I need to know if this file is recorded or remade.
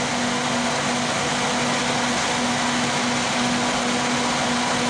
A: recorded